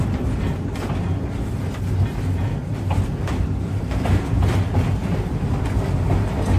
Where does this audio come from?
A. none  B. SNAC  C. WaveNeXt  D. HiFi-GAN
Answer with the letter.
A